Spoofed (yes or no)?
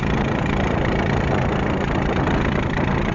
no